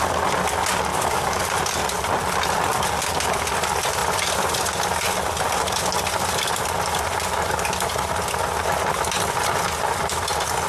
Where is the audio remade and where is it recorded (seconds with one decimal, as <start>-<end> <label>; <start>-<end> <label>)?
0.0-0.9 recorded; 0.9-1.4 remade; 1.4-10.7 recorded